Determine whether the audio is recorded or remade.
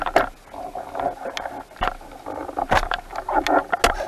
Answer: recorded